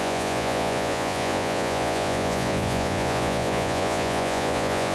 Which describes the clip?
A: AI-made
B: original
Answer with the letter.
A